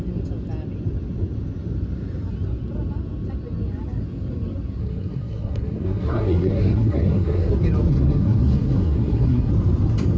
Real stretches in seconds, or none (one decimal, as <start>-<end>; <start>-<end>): 0.0-4.8; 7.5-7.9; 9.5-10.2